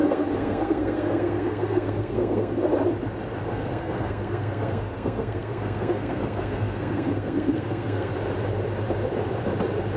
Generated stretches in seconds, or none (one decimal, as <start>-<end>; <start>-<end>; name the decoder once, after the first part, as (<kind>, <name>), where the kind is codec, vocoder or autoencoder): 0.0-2.7 (codec, SNAC); 3.5-8.1